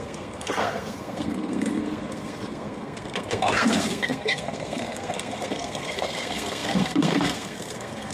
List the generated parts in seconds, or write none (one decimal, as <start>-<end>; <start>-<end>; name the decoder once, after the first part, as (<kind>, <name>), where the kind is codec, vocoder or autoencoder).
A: 0.0-8.1 (codec, SNAC)